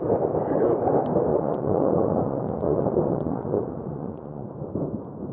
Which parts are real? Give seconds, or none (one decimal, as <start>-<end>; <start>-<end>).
0.0-1.3; 4.5-5.3